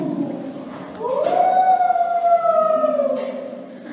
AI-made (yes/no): no